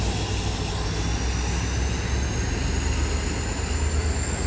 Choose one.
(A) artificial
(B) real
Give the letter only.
B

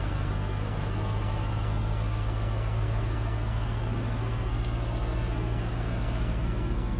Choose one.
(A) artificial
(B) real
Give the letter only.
A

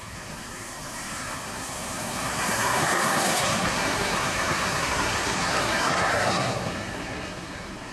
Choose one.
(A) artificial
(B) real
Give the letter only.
A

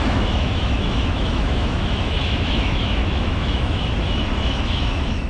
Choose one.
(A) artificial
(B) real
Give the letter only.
A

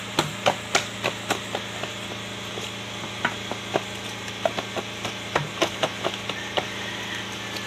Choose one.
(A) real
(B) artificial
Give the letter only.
A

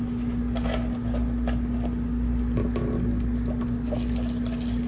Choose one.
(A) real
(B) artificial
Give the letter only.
A